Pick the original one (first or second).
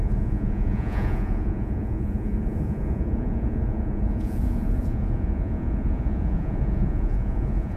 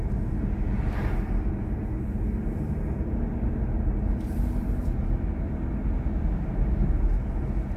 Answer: second